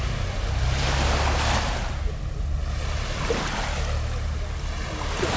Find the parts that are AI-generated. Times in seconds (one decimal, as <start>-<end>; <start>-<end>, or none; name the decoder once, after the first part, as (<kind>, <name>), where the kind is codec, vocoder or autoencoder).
none